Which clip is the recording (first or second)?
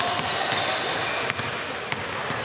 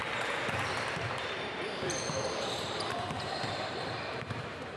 first